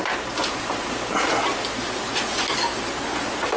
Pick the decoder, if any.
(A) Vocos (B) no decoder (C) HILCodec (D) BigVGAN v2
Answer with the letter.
B